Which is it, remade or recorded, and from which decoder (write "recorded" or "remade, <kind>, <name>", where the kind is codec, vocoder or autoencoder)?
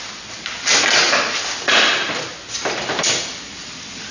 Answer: recorded